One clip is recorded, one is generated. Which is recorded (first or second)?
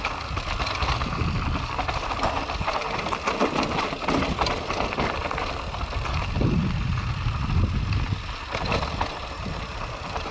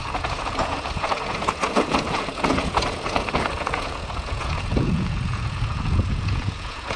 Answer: first